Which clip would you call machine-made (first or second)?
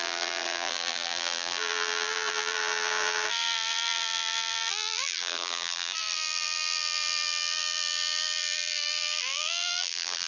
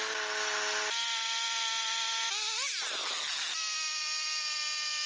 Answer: first